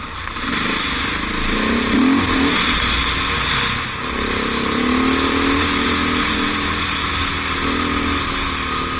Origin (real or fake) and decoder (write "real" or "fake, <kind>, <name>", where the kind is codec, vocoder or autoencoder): real